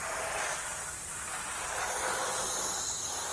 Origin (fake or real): real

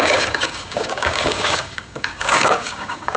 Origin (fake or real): fake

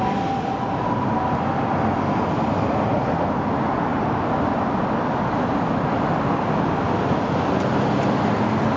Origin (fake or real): real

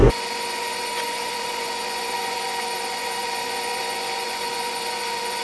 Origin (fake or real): fake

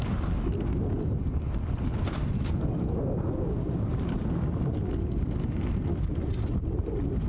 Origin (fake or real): real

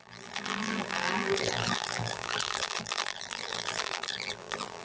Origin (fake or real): fake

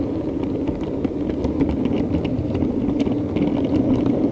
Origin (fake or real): real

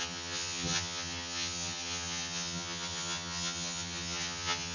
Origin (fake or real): fake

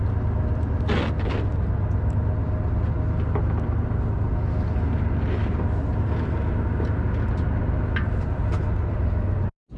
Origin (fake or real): real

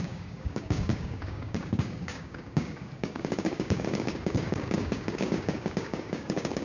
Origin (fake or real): fake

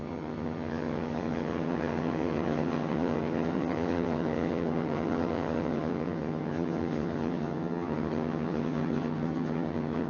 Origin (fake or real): fake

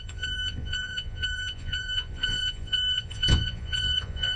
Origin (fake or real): fake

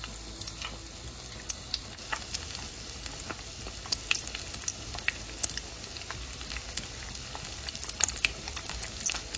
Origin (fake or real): real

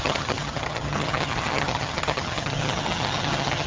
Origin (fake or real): fake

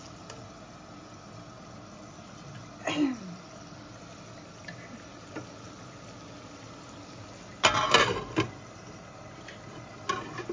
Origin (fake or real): real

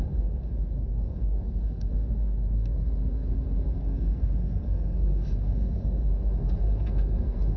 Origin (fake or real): fake